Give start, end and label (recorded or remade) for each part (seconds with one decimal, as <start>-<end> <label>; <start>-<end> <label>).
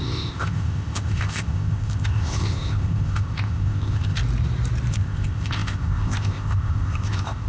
0.0-4.2 remade; 4.2-4.9 recorded; 4.9-7.5 remade